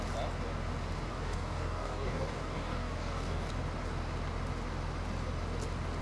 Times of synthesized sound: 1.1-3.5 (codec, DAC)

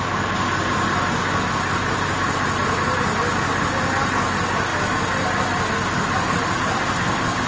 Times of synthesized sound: none